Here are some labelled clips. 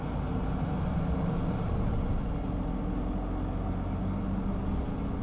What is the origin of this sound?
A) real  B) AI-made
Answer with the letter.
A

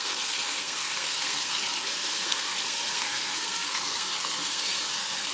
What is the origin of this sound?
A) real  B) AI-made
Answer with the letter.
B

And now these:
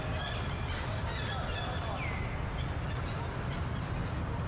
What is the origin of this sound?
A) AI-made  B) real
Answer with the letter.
B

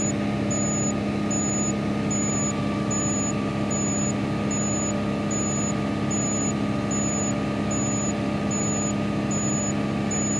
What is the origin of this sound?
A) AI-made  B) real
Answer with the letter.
B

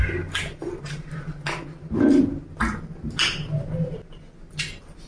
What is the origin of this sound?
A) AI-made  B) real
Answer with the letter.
B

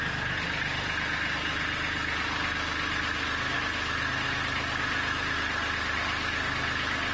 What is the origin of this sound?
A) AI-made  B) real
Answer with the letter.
B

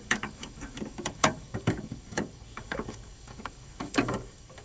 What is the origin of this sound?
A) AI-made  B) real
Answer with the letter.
A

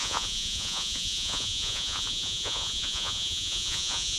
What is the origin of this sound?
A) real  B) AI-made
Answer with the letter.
B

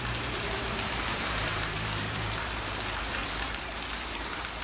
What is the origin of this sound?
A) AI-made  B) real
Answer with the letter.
A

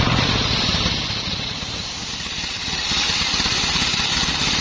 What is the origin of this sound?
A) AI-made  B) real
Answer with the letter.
B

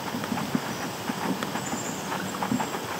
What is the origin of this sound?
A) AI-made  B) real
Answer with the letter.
B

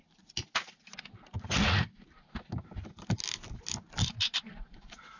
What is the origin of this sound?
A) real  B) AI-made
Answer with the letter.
A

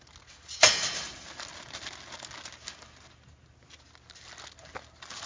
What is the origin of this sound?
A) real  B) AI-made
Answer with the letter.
A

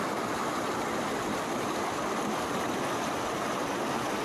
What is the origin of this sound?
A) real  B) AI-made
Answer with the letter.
A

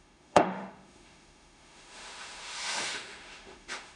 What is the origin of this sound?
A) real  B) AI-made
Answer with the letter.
B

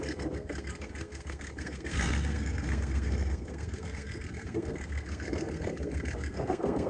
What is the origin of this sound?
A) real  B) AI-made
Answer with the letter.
B